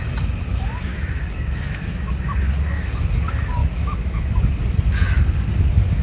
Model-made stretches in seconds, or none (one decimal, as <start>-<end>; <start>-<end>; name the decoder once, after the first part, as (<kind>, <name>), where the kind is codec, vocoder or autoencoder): 0.9-2.1 (autoencoder, DAC-VAE); 3.6-4.4